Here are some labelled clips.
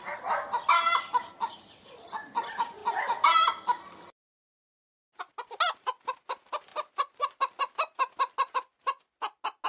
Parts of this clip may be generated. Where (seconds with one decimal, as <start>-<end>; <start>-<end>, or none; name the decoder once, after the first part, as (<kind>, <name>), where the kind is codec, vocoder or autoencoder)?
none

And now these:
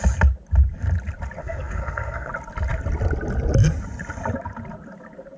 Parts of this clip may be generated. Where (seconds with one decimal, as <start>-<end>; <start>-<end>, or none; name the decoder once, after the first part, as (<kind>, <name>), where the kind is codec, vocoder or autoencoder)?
1.4-2.3 (codec, SNAC)

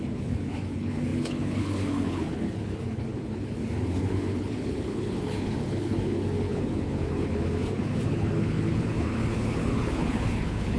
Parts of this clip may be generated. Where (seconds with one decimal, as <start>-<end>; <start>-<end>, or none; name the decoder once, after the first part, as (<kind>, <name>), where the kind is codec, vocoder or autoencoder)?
0.0-10.8 (codec, HILCodec)

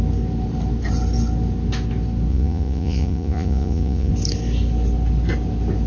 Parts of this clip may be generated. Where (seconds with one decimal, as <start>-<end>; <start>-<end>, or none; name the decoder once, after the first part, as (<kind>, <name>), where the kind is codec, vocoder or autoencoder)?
2.3-4.1 (vocoder, Vocos)

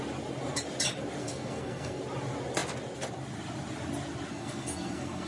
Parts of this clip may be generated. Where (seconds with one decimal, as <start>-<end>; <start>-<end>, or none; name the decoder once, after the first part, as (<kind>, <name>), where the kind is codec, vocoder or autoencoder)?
1.2-2.0 (codec, SNAC); 4.3-5.3